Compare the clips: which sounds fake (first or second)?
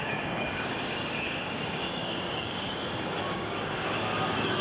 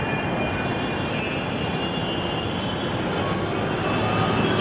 first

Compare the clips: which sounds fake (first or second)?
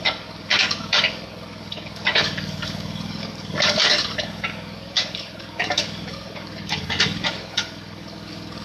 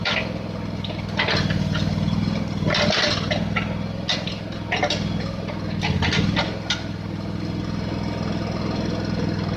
first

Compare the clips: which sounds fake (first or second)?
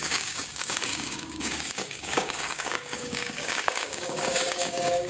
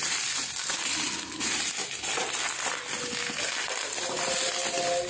first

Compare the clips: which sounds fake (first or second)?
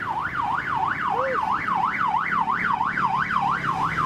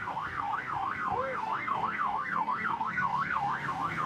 second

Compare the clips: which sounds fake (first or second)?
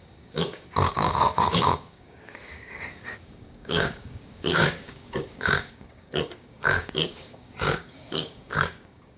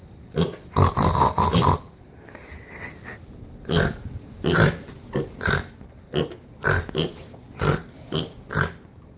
first